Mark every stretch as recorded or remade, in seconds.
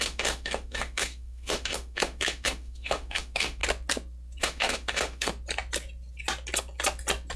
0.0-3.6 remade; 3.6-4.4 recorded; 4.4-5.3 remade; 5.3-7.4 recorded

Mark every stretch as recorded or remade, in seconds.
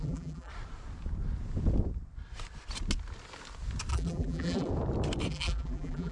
0.0-0.5 remade; 0.5-3.9 recorded; 3.9-4.7 remade; 4.7-5.3 recorded; 5.3-6.1 remade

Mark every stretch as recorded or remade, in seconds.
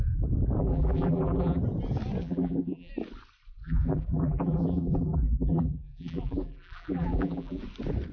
0.0-0.6 recorded; 0.6-1.6 remade; 1.6-2.2 recorded; 2.2-2.9 remade; 2.9-3.6 recorded; 3.6-7.6 remade; 7.6-8.1 recorded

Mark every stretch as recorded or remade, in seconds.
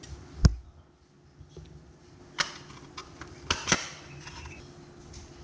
0.0-5.4 recorded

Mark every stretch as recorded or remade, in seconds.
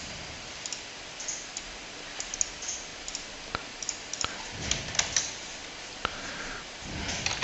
0.0-7.4 recorded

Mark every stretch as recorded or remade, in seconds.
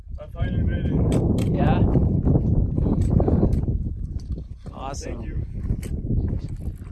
0.0-1.6 remade; 1.6-2.0 recorded; 2.0-6.1 remade; 6.1-6.9 recorded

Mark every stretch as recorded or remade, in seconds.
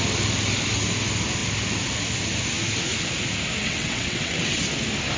0.0-3.6 recorded; 3.6-4.6 remade; 4.6-5.2 recorded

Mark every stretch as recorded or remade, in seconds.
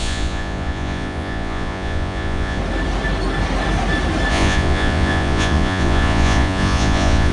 0.0-2.6 remade; 2.6-4.3 recorded; 4.3-7.3 remade